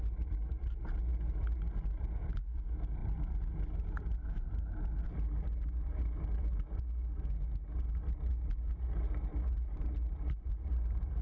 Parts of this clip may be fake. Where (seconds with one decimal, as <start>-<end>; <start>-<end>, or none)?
9.3-11.2

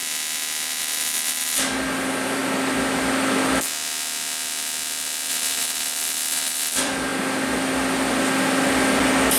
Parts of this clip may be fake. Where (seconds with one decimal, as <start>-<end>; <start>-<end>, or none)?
0.8-2.4; 5.3-7.1

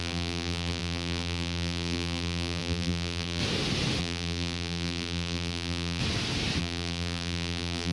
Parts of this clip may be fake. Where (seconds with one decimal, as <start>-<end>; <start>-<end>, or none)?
0.0-3.4; 4.0-6.0; 6.6-7.9

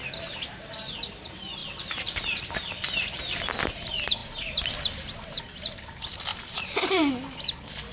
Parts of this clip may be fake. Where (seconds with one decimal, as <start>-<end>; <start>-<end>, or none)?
1.6-3.2; 6.3-7.1

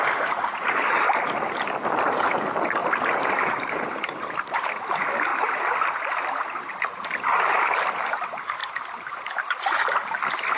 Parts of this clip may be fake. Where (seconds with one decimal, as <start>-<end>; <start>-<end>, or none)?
2.8-4.7; 5.3-5.9